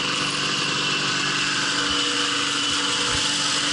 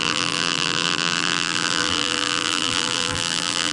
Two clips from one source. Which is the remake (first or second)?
second